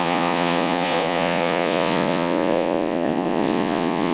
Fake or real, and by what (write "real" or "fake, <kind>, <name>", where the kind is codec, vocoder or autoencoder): fake, vocoder, Vocos